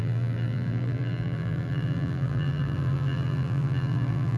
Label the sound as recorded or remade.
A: remade